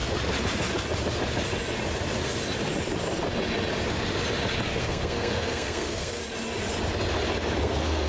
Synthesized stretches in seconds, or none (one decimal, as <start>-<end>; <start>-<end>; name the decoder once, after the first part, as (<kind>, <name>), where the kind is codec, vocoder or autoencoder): 4.8-6.2 (codec, SNAC); 7.6-8.1